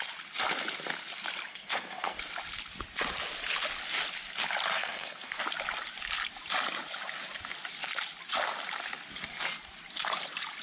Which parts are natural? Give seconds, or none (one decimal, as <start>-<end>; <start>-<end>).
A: 0.0-1.5; 2.2-4.7; 5.4-10.6